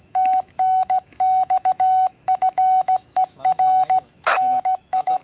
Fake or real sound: fake